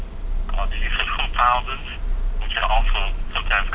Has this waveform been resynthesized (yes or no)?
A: no